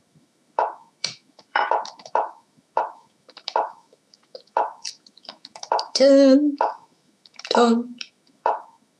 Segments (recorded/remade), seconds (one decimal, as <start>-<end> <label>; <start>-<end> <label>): 0.0-9.0 remade

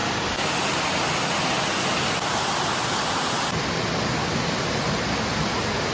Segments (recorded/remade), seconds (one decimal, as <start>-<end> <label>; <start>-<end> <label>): 0.0-5.9 recorded

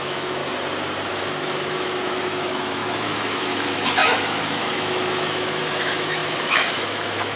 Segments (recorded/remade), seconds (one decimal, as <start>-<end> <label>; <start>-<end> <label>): 0.0-0.4 remade; 0.4-1.1 recorded; 1.1-7.4 remade

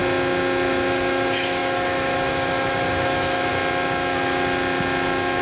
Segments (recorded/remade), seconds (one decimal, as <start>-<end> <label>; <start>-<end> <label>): 0.0-0.7 recorded; 0.7-3.5 remade; 3.5-5.4 recorded

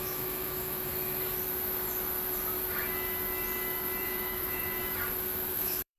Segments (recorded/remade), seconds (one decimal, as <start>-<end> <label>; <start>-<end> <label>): 0.0-0.9 remade; 0.9-4.0 recorded; 4.0-4.8 remade; 4.8-5.5 recorded; 5.5-6.0 remade

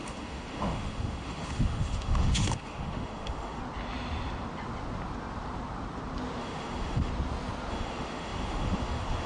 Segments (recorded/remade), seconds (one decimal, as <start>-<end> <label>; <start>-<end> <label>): 0.0-3.6 remade; 3.6-6.4 recorded; 6.4-7.1 remade; 7.1-7.7 recorded; 7.7-9.3 remade